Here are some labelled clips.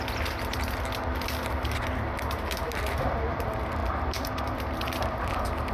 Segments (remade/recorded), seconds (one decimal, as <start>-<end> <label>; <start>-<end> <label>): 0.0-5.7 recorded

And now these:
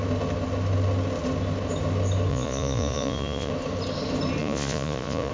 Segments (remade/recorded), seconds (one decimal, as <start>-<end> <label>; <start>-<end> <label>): 0.0-2.3 recorded; 2.3-3.5 remade; 3.5-4.4 recorded; 4.4-5.3 remade

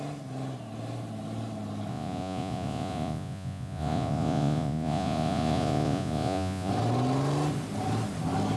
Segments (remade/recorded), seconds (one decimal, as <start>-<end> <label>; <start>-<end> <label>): 0.0-1.9 recorded; 1.9-6.7 remade; 6.7-8.6 recorded

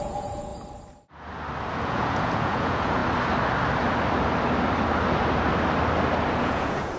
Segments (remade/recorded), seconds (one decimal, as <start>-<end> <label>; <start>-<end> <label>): 0.0-0.5 remade; 0.5-1.7 recorded; 1.7-3.0 remade; 3.0-6.3 recorded; 6.3-7.0 remade

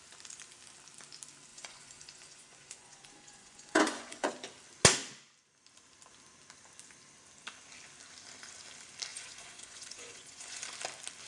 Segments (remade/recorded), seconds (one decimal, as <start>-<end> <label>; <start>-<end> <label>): 0.0-1.5 recorded; 1.5-4.3 remade; 4.3-9.1 recorded; 9.1-10.6 remade; 10.6-11.3 recorded

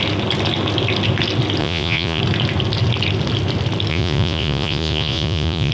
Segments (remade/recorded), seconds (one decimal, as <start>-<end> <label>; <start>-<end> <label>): 0.0-1.6 recorded; 1.6-2.2 remade; 2.2-3.9 recorded; 3.9-5.7 remade

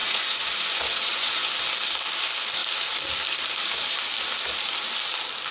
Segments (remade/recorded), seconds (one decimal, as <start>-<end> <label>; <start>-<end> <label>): 0.0-1.5 remade; 1.5-5.5 recorded

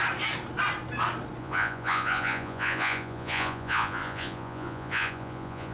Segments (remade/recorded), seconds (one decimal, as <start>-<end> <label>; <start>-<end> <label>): 0.0-1.4 recorded; 1.4-5.7 remade